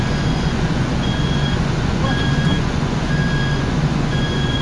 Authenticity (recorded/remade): remade